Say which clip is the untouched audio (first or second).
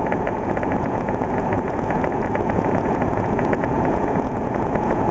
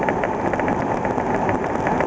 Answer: second